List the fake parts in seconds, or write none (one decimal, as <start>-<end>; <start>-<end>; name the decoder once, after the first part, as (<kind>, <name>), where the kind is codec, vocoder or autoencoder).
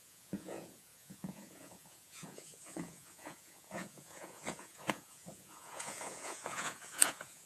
0.0-7.5 (vocoder, Vocos)